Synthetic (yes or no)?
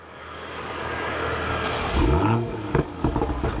yes